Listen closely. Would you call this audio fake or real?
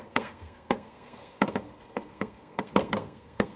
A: fake